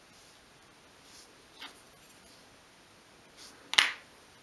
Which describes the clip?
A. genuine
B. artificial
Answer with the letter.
A